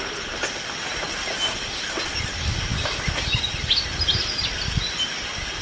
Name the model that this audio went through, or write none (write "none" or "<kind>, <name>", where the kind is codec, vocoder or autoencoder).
none